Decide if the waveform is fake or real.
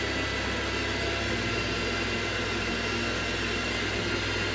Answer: real